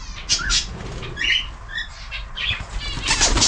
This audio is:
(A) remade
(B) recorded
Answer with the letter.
B